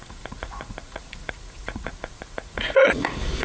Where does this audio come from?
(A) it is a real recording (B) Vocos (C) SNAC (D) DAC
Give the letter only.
B